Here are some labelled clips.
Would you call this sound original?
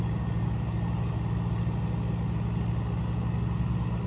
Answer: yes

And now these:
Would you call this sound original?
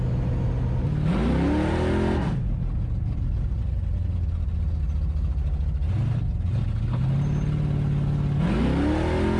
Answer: yes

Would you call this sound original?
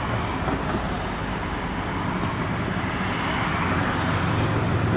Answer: yes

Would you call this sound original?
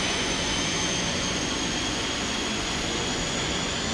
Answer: no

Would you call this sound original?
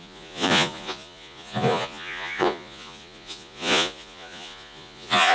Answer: no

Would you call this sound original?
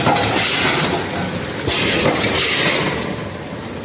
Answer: yes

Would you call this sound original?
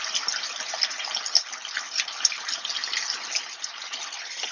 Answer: yes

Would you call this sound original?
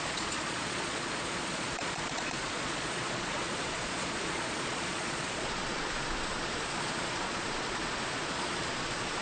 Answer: no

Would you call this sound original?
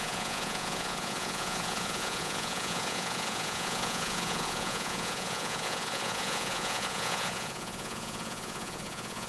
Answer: no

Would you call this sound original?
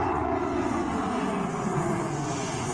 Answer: no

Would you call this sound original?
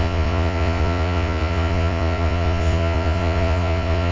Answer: no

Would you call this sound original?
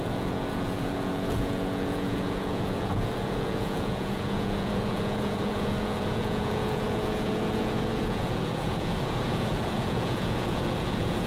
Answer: no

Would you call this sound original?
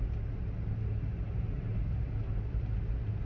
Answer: yes